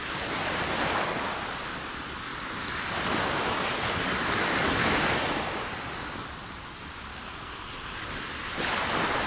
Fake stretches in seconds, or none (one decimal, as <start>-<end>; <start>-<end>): 7.1-7.6